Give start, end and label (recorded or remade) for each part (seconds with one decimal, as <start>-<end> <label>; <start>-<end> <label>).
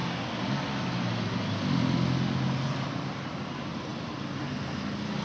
0.0-5.2 recorded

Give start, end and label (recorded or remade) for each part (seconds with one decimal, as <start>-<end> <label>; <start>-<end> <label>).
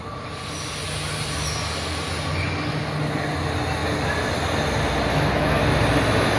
0.0-5.1 recorded; 5.1-5.6 remade; 5.6-6.4 recorded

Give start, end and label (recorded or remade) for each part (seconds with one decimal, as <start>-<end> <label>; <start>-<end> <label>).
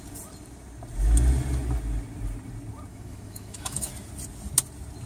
0.0-2.9 recorded; 2.9-3.9 remade; 3.9-5.1 recorded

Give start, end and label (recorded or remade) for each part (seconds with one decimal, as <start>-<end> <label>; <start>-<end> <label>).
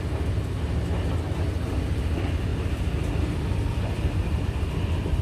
0.0-5.2 recorded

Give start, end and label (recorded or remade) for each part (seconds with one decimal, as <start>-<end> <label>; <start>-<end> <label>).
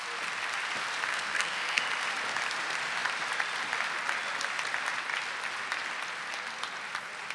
0.0-1.1 recorded; 1.1-1.8 remade; 1.8-7.3 recorded